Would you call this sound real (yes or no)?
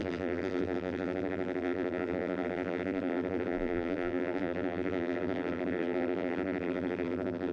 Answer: no